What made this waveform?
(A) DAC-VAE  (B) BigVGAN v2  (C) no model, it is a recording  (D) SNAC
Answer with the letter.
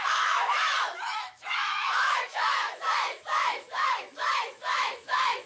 A